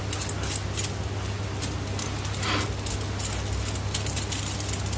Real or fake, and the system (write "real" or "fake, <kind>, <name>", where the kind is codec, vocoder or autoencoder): real